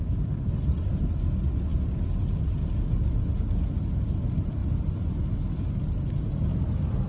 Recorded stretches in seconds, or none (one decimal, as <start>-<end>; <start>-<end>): 0.0-7.1